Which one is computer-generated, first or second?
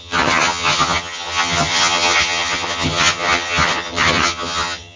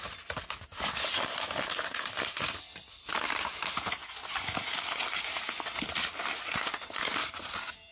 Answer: first